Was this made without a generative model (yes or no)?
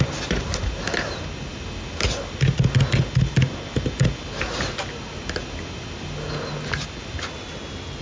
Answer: yes